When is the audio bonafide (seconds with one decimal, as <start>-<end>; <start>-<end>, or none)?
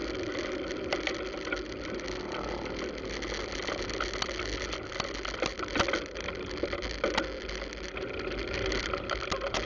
0.0-9.7